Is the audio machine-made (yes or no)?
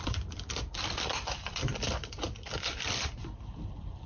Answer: yes